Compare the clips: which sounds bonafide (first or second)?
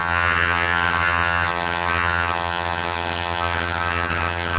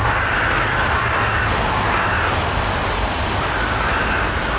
second